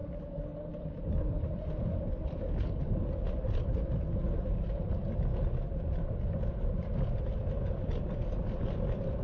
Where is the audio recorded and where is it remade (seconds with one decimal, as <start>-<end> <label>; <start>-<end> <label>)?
0.0-9.2 recorded